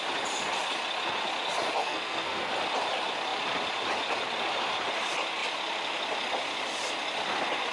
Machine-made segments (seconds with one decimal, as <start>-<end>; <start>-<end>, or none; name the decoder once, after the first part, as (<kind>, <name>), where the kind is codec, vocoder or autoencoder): 1.8-2.5 (codec, SNAC)